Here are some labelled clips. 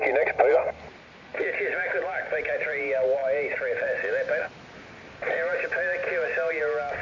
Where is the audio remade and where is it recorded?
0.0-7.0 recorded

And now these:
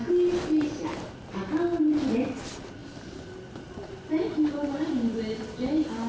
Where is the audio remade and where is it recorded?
0.0-6.1 recorded

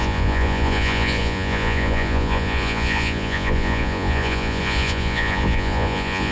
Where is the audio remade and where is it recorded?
0.0-6.3 remade